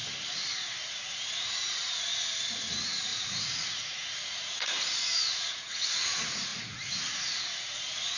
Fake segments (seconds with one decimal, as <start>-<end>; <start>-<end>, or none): 1.0-2.1; 2.7-8.2

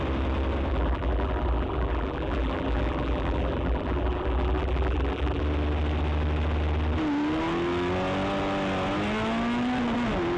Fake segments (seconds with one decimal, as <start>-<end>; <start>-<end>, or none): 0.7-5.4

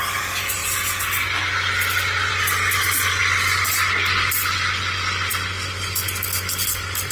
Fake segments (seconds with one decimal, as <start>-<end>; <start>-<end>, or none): none

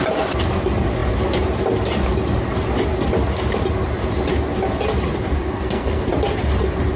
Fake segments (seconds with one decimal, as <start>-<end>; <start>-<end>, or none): 5.4-6.1

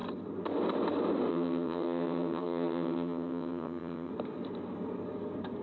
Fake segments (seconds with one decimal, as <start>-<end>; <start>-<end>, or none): 1.3-4.1

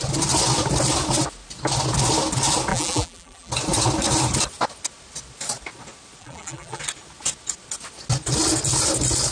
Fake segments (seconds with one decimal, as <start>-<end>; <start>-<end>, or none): 2.7-3.5; 6.2-6.8

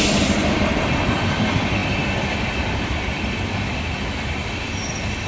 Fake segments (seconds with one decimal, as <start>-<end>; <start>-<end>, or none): none